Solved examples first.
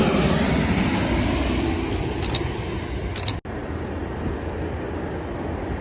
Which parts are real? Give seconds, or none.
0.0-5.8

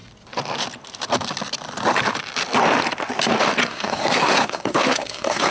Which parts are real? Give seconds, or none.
0.0-3.6

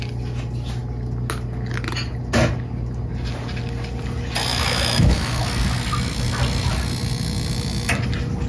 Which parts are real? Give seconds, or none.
0.0-4.5; 5.4-8.5